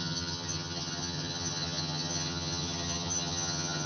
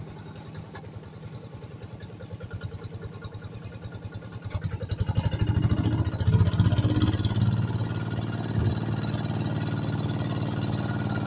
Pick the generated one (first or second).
first